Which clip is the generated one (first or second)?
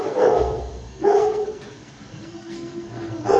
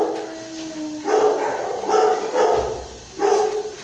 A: first